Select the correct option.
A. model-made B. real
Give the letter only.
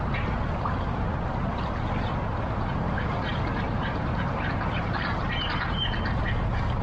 A